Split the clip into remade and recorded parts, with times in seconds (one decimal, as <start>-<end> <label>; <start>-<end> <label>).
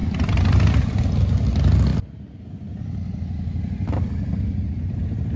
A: 0.0-1.0 remade; 1.0-5.4 recorded